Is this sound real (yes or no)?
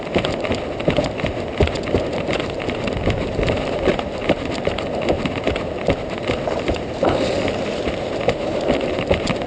yes